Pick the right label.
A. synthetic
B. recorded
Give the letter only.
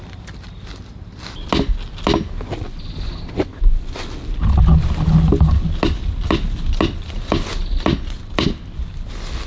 B